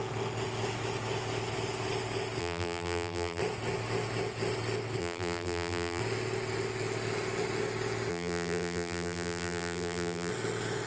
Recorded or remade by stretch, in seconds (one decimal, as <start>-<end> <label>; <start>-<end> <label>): 0.0-2.4 recorded; 2.4-3.4 remade; 3.4-5.0 recorded; 5.0-6.0 remade; 6.0-8.1 recorded; 8.1-10.3 remade; 10.3-10.9 recorded